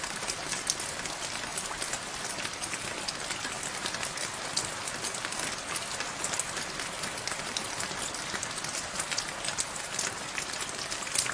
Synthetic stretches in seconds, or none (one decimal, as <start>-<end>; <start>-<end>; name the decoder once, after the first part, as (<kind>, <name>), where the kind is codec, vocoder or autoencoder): 1.5-2.4 (vocoder, BigVGAN v2)